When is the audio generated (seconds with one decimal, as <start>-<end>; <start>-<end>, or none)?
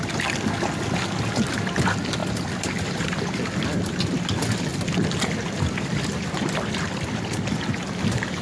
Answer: 2.2-3.9; 4.7-7.6